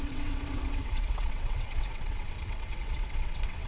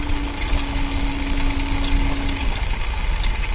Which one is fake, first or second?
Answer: first